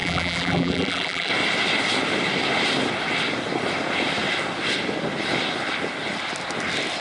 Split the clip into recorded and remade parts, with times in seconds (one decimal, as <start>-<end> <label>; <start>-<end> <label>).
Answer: 0.0-1.3 remade; 1.3-7.0 recorded